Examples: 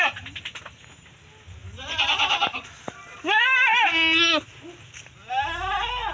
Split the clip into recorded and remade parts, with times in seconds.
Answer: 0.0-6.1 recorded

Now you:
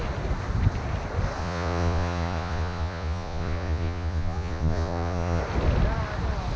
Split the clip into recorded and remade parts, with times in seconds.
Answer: 0.0-1.4 recorded; 1.4-5.4 remade; 5.4-6.6 recorded

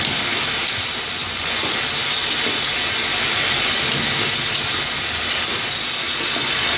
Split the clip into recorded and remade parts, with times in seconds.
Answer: 0.0-1.2 recorded; 1.2-1.8 remade; 1.8-6.8 recorded

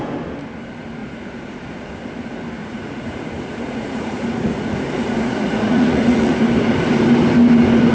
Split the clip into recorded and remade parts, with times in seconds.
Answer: 0.0-1.0 recorded; 1.0-1.9 remade; 1.9-2.6 recorded; 2.6-6.4 remade; 6.4-7.9 recorded

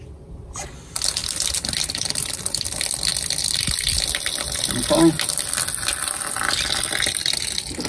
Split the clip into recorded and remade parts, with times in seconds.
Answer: 0.0-7.9 recorded

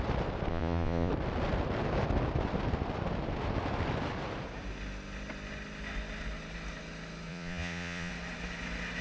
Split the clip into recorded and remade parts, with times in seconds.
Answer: 0.0-0.5 recorded; 0.5-1.1 remade; 1.1-7.3 recorded; 7.3-8.1 remade; 8.1-9.0 recorded

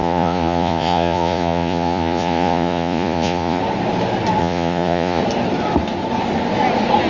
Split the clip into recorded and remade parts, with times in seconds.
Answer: 0.0-3.6 remade; 3.6-4.4 recorded; 4.4-5.2 remade; 5.2-7.1 recorded

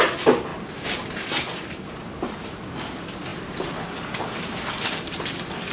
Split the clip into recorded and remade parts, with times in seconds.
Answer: 0.0-5.7 recorded